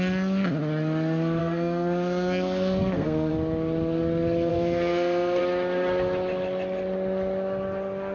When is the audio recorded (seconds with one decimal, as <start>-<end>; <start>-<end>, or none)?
0.0-1.4; 3.3-4.5; 5.4-8.1